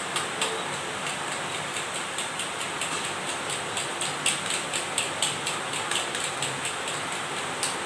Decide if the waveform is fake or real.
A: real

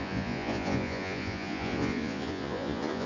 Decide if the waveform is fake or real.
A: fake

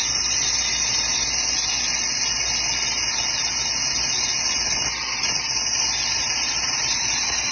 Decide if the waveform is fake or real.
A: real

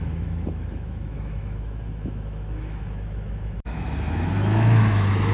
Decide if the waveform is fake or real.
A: fake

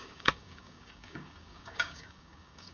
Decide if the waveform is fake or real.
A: fake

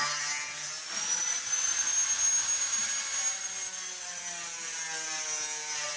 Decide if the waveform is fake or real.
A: real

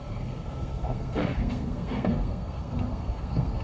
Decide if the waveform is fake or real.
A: fake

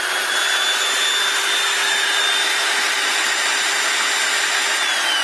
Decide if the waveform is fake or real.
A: real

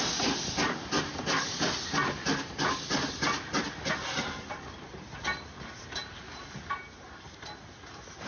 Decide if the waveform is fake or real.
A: real